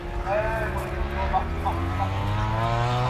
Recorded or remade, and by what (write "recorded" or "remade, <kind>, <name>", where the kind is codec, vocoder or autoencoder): recorded